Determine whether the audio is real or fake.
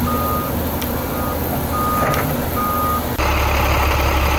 real